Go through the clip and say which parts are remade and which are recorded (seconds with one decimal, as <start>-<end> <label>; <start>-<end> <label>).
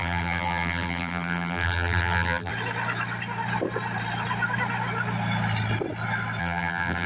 0.0-2.5 remade; 2.5-6.4 recorded; 6.4-7.1 remade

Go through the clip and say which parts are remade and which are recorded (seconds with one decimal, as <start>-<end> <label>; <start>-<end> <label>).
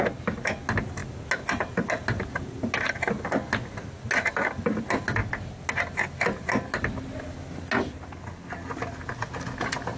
0.0-10.0 recorded